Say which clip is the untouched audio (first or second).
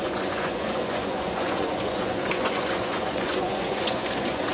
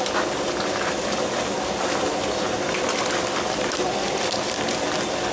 second